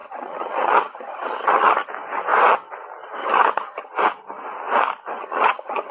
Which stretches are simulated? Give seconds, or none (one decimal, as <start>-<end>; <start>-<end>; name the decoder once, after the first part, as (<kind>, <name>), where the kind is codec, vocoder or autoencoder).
0.0-1.9 (vocoder, HiFi-GAN); 3.2-3.9; 5.2-5.9